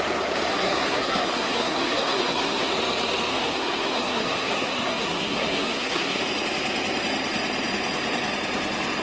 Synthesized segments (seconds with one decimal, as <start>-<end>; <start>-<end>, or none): 0.5-2.7; 3.3-6.2